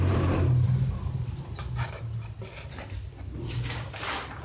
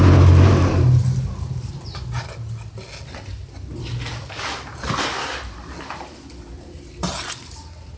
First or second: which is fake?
first